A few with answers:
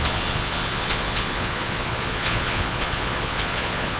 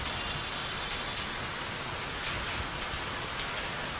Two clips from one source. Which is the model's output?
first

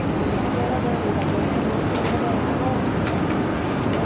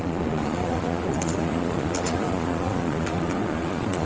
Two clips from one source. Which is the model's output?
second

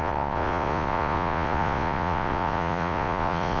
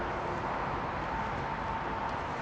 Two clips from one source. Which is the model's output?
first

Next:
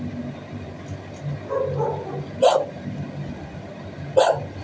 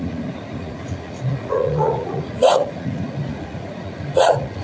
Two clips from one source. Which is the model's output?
second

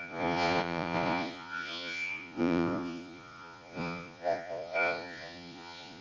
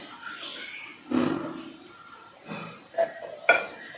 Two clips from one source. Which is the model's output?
first